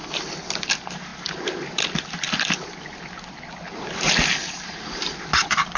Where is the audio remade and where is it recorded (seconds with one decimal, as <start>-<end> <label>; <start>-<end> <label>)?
0.0-5.8 recorded